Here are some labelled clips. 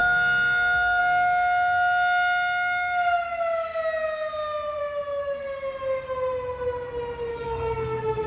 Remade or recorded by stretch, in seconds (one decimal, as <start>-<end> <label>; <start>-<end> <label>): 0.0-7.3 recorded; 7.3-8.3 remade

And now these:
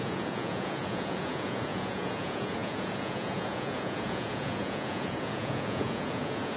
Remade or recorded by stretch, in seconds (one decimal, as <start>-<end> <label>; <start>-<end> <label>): 0.0-6.6 remade

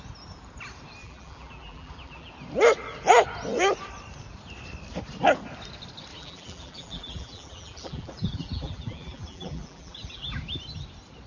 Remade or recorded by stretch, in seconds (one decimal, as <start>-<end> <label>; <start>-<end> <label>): 0.0-1.0 recorded; 1.0-2.3 remade; 2.3-6.1 recorded; 6.1-10.4 remade; 10.4-11.3 recorded

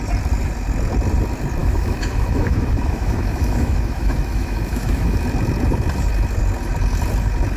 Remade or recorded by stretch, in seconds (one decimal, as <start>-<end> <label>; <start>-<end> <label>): 0.0-1.6 recorded; 1.6-5.2 remade; 5.2-7.6 recorded

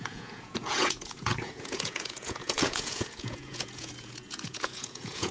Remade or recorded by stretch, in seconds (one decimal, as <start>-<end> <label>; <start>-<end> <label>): 0.0-5.3 remade

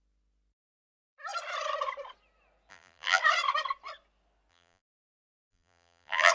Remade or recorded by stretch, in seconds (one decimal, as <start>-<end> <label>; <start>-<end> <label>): 0.0-2.7 recorded; 2.7-3.2 remade; 3.2-4.5 recorded; 4.5-6.3 remade

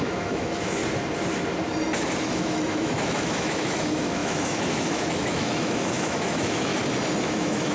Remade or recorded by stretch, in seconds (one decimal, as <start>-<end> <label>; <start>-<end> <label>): 0.0-0.8 remade; 0.8-2.2 recorded; 2.2-6.7 remade; 6.7-7.2 recorded; 7.2-7.7 remade

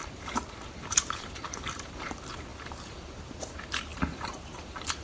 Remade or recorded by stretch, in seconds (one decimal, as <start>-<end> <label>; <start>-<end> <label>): 0.0-5.0 remade